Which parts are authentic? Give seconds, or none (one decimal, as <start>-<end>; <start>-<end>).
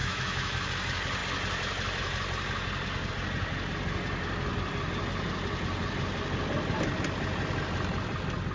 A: 0.7-8.5